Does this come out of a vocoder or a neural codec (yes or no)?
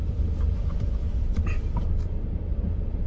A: yes